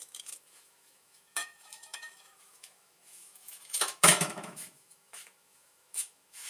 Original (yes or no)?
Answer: no